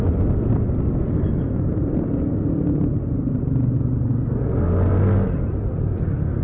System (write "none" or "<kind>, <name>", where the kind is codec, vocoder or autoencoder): none